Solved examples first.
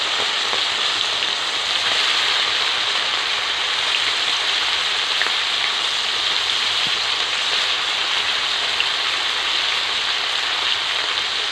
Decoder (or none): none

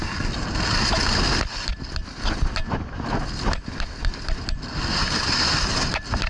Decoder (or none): none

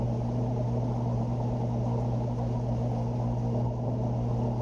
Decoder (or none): none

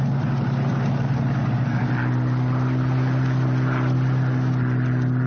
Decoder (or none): none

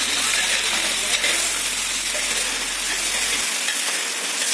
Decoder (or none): none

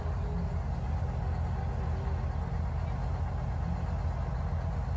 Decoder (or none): none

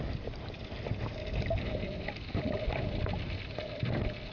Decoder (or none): none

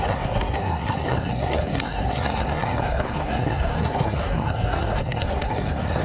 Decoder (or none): codec, SNAC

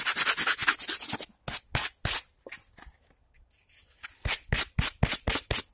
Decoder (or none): none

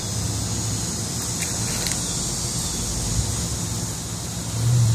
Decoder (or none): none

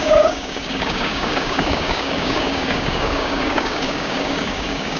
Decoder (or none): codec, DAC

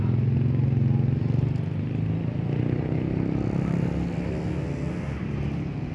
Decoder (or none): none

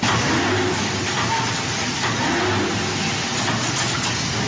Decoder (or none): none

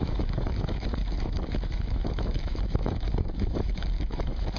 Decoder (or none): autoencoder, DAC-VAE